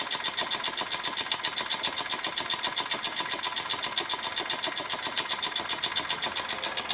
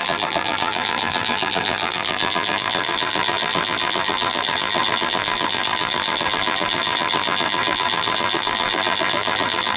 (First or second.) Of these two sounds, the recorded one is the first